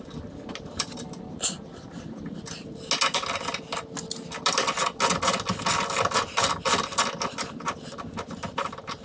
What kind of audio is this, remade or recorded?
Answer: recorded